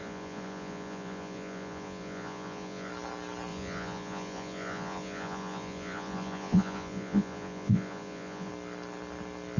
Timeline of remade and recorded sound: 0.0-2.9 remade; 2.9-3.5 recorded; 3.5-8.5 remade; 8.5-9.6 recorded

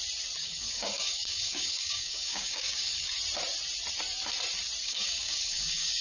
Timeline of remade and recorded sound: 0.0-0.4 recorded; 0.4-3.1 remade; 3.1-4.8 recorded; 4.8-6.0 remade

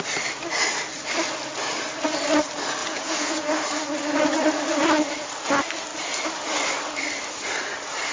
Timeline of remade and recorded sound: 0.0-2.8 recorded; 2.8-3.5 remade; 3.5-8.1 recorded